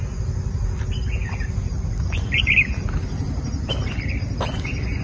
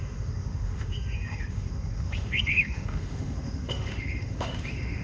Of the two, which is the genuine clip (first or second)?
first